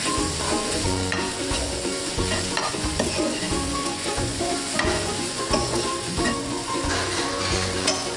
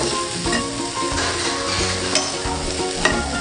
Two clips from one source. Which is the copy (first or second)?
first